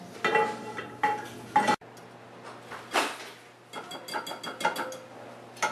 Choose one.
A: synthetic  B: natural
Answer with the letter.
B